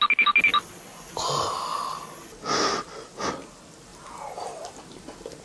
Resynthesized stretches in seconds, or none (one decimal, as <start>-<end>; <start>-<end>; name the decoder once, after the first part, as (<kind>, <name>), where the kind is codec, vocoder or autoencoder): 3.9-4.8 (vocoder, BigVGAN v2)